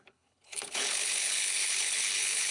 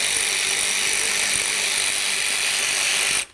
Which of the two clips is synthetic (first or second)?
first